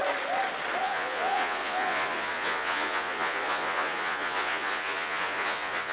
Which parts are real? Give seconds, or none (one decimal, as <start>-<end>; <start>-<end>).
0.0-0.8